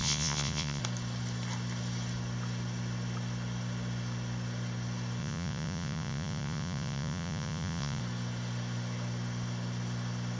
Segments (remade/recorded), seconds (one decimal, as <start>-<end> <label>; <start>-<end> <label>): 0.0-0.8 remade; 0.8-5.2 recorded; 5.2-8.0 remade; 8.0-10.4 recorded